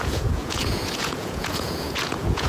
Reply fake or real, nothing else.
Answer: fake